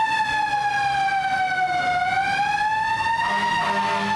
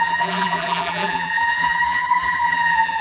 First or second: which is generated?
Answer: second